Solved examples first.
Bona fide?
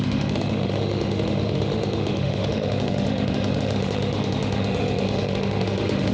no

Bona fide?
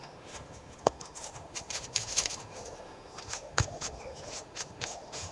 no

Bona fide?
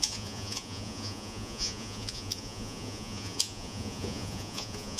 no